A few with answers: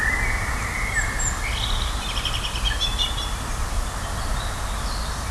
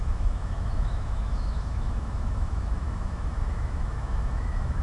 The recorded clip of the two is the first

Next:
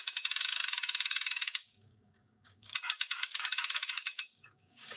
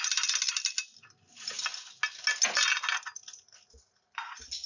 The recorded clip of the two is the second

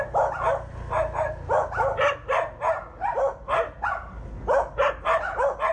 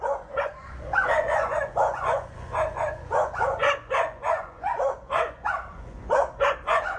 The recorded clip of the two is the first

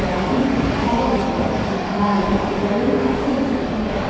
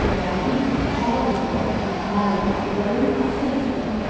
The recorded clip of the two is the second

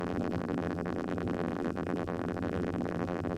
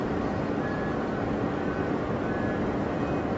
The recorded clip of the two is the second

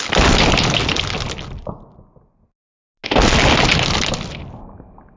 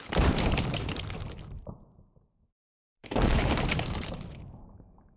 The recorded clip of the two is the first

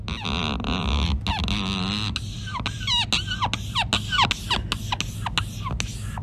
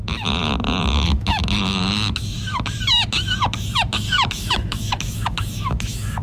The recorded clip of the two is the first